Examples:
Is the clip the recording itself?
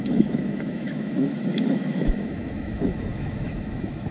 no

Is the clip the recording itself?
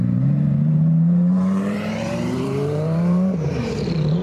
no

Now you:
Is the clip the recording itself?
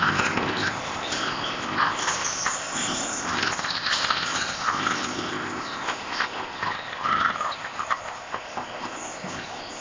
no